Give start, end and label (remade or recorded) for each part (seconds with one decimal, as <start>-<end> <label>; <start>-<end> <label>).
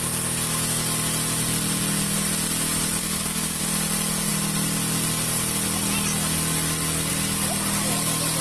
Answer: 0.0-3.0 recorded; 3.0-3.6 remade; 3.6-8.4 recorded